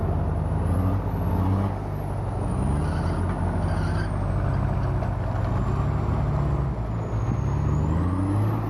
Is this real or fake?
real